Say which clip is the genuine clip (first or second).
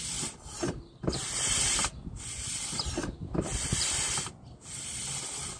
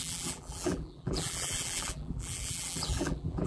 first